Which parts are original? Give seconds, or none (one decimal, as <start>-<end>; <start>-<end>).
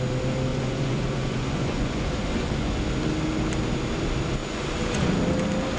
0.0-0.5; 2.8-4.4; 5.1-5.8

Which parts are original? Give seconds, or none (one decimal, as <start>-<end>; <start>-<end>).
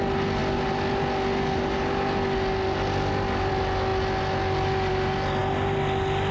0.0-6.3